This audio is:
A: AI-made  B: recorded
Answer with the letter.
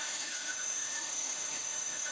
A